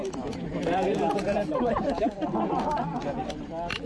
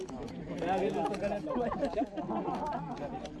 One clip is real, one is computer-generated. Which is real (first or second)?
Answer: second